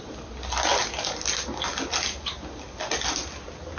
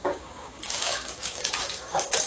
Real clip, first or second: first